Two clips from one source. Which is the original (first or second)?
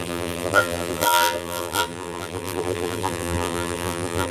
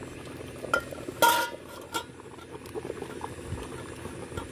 second